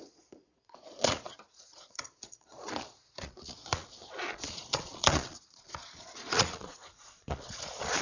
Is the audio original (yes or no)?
no